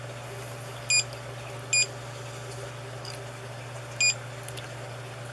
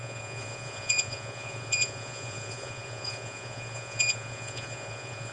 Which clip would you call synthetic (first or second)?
second